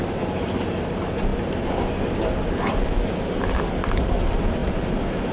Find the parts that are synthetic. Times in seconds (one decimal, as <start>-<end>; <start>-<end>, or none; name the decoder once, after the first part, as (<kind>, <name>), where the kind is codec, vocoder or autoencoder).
none